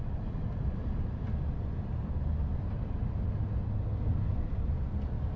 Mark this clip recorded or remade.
recorded